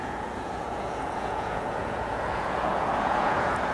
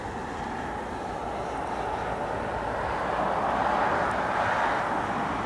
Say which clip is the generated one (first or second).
first